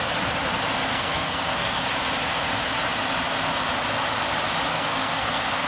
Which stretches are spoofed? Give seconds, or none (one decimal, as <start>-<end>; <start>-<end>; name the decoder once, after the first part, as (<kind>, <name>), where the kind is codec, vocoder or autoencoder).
0.9-1.9 (codec, SNAC); 4.7-5.7